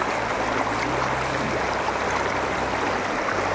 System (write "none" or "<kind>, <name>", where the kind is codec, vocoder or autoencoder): none